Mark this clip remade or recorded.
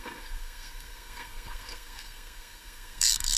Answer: remade